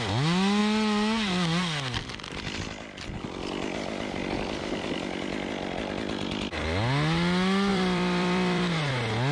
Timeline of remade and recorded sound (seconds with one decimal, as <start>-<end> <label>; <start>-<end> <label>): 0.0-7.7 recorded; 7.7-8.9 remade; 8.9-9.3 recorded